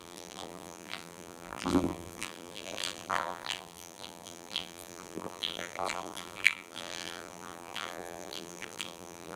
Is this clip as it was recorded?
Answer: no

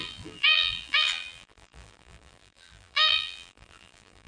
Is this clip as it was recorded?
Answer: no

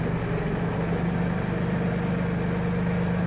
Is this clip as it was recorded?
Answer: yes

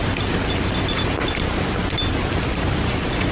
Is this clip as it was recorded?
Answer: yes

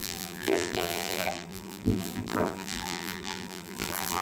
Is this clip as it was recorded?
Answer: no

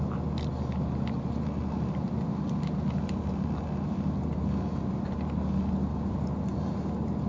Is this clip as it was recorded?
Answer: yes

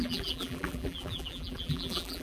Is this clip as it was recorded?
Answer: no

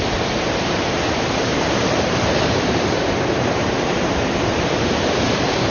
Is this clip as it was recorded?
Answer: no